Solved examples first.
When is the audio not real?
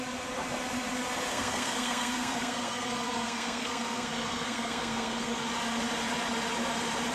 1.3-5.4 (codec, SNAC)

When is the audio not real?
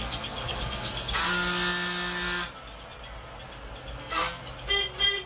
0.0-1.2 (codec, SNAC); 4.0-4.4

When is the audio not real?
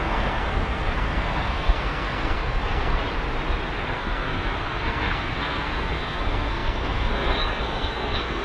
0.0-3.0 (codec, SNAC); 3.8-8.4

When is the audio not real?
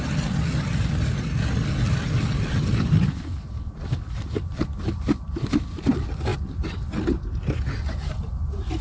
none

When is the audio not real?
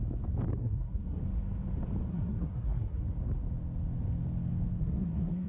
0.6-1.2 (codec, SNAC); 2.1-3.0; 4.8-5.5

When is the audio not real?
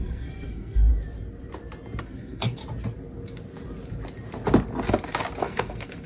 0.0-0.9 (codec, SNAC); 2.0-2.6; 5.4-6.1